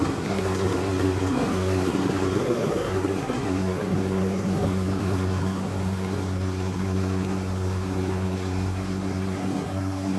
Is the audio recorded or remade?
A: remade